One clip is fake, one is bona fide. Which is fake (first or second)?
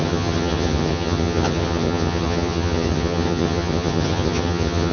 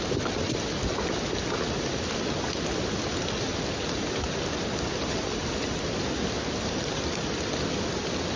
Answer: first